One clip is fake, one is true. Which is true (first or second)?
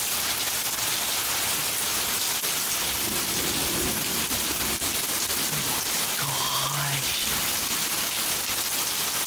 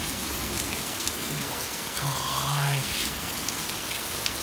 first